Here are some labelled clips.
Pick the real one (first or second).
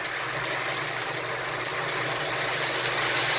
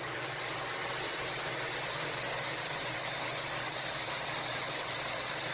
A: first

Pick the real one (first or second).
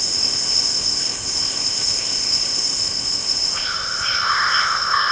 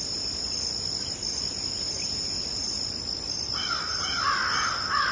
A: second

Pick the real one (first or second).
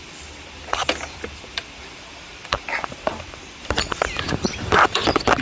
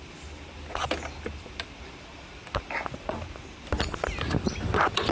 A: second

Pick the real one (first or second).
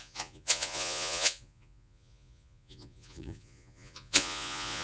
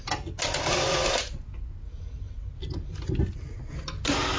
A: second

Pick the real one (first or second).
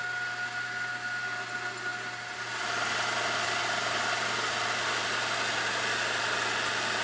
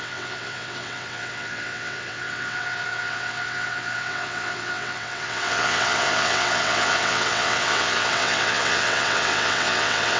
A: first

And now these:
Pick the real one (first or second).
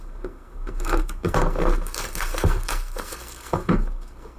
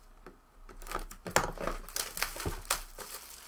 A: second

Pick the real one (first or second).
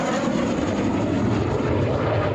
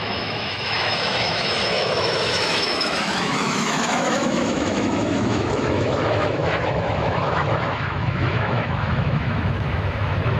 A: first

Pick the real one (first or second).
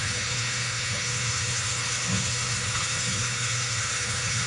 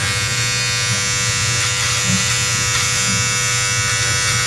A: second